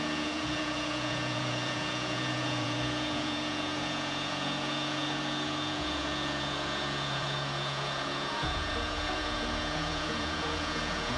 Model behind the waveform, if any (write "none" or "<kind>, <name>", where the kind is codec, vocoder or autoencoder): vocoder, Vocos